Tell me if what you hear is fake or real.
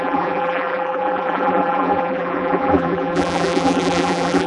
fake